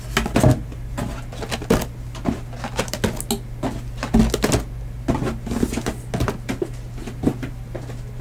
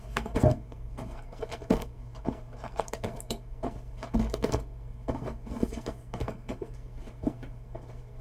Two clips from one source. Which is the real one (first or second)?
first